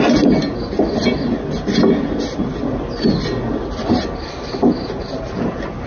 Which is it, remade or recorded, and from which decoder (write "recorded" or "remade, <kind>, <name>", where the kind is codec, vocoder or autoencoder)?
recorded